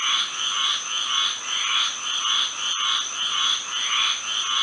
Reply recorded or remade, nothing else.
recorded